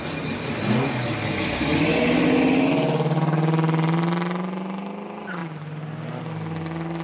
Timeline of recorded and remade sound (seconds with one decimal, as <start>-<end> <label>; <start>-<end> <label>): 0.0-7.0 recorded